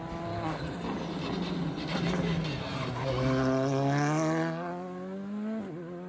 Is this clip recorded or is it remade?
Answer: recorded